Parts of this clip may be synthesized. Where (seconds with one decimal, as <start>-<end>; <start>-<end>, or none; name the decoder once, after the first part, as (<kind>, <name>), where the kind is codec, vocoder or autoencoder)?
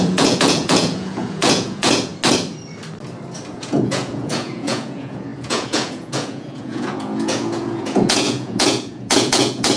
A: 0.0-2.1 (vocoder, Vocos); 3.5-9.8